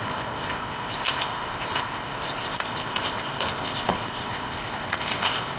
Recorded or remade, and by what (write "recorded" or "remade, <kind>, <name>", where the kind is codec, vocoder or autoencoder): remade, codec, ZipCodec